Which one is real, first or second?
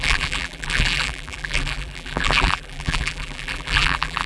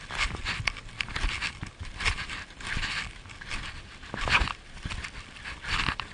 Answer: second